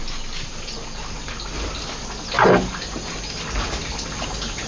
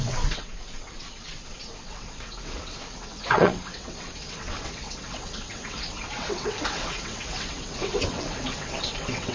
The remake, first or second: second